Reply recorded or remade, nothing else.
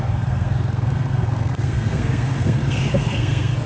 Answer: remade